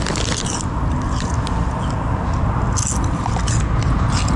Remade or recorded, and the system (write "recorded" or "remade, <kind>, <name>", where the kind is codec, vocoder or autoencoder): recorded